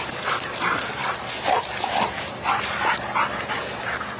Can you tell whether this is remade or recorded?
recorded